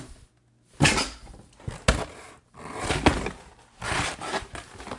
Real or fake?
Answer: real